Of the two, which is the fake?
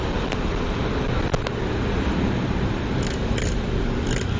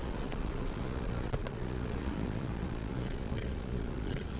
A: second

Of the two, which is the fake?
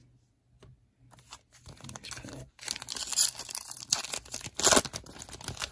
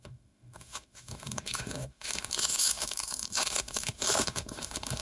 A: second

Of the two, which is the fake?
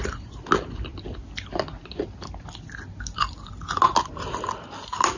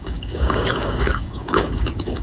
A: second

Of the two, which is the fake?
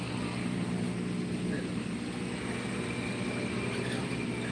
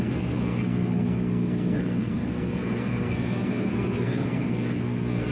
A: second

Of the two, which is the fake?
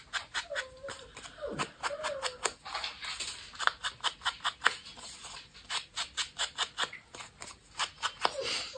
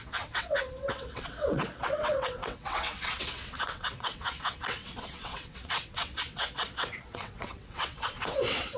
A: second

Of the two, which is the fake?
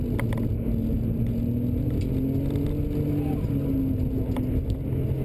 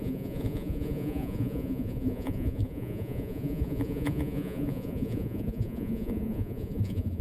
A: second